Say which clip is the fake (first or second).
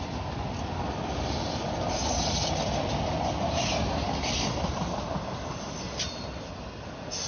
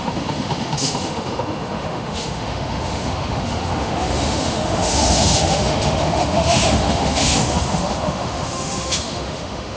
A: second